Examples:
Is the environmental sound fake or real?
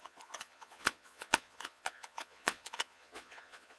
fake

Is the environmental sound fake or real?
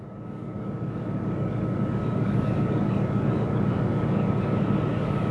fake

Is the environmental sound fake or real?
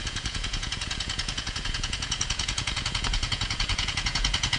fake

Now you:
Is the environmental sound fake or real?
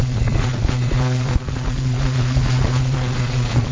fake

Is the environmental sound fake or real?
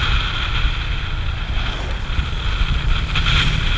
fake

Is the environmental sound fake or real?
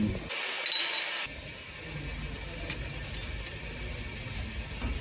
real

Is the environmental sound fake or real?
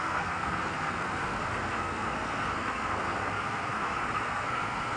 fake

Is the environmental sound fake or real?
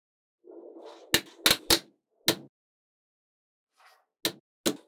real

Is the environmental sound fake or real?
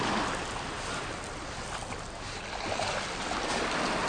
real